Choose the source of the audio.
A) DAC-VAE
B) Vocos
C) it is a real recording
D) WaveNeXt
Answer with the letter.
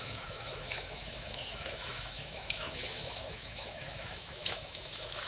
A